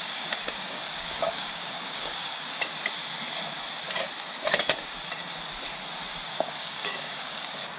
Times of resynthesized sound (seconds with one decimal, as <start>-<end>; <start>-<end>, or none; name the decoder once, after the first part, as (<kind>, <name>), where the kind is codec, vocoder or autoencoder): 0.0-2.7 (codec, DAC); 6.3-7.8